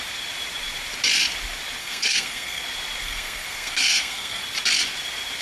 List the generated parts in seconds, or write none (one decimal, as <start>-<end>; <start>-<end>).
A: 1.8-2.6; 3.0-4.4